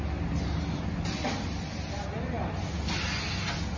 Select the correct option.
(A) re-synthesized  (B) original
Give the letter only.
B